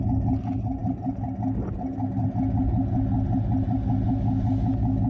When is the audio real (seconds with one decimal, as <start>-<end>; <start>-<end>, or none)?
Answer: 0.0-5.1